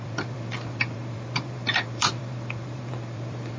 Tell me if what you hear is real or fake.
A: fake